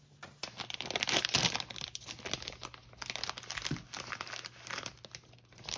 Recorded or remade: recorded